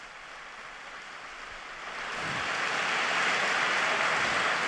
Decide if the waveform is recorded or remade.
recorded